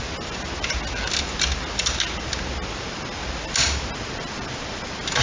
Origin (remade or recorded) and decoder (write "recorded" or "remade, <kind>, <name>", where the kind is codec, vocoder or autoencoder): recorded